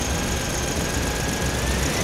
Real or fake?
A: real